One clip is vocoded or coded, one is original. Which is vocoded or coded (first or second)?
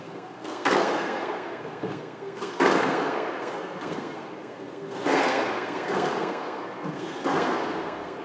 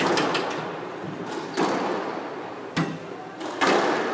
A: first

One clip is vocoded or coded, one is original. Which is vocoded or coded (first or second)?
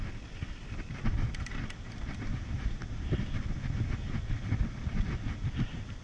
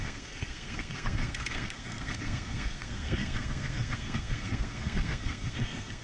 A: second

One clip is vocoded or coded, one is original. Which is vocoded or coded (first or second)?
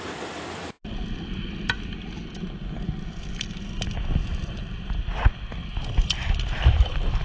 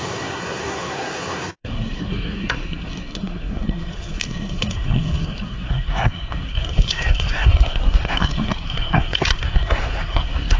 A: second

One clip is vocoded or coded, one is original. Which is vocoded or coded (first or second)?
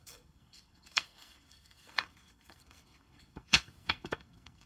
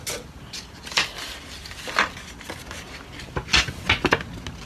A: first